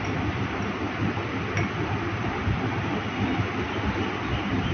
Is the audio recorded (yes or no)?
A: yes